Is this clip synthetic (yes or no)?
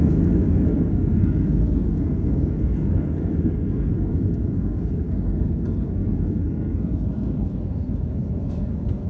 yes